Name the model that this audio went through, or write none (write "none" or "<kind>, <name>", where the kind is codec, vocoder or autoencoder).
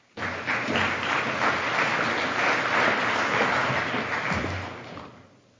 none